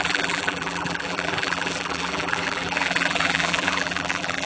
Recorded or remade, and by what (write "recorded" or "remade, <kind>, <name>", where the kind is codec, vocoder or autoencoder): remade, vocoder, BigVGAN v2